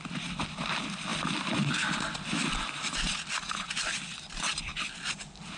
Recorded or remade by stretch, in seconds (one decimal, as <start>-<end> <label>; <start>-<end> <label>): 0.0-5.6 recorded